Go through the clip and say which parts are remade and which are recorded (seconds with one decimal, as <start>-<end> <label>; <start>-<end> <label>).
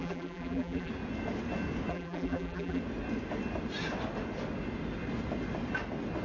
0.0-0.9 remade; 0.9-1.9 recorded; 1.9-2.8 remade; 2.8-6.2 recorded